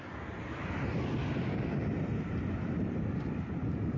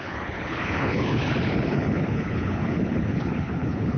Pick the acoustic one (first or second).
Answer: first